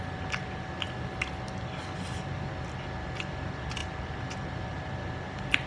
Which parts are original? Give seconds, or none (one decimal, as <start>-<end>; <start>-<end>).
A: 0.0-3.8